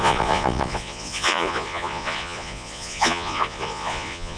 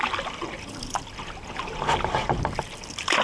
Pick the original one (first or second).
second